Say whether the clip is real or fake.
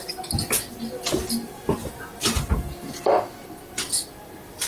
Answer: real